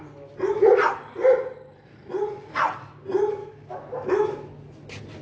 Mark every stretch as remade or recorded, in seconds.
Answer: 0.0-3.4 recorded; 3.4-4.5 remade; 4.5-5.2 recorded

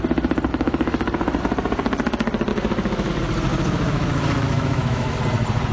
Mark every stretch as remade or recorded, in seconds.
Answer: 0.0-0.5 recorded; 0.5-1.4 remade; 1.4-2.5 recorded; 2.5-3.1 remade; 3.1-3.5 recorded; 3.5-5.2 remade; 5.2-5.7 recorded

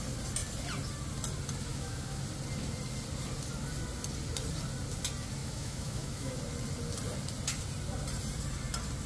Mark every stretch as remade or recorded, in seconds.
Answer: 0.0-1.7 recorded; 1.7-2.2 remade; 2.2-5.4 recorded; 5.4-6.3 remade; 6.3-9.1 recorded